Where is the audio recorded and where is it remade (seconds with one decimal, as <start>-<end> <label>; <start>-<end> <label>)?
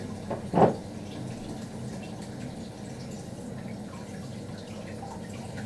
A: 0.0-5.7 recorded